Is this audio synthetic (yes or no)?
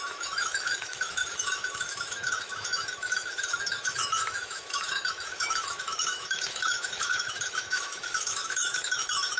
yes